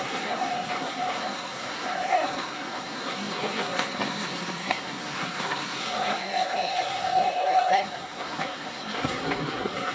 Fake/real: fake